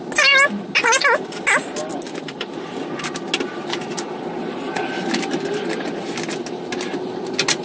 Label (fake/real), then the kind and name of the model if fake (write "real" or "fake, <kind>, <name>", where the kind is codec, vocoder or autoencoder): real